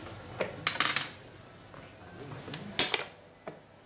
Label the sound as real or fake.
real